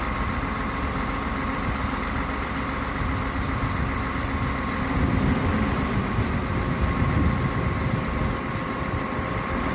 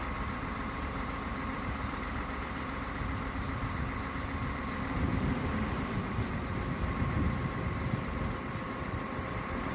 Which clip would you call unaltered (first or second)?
first